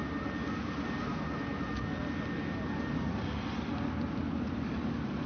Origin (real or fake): real